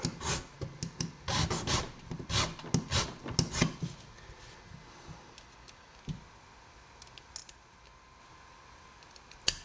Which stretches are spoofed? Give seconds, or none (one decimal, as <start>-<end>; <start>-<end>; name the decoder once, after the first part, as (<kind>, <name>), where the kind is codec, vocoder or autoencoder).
none